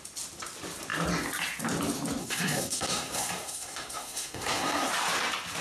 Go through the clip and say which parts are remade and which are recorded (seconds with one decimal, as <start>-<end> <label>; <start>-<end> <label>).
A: 0.0-2.2 recorded; 2.2-4.9 remade; 4.9-5.6 recorded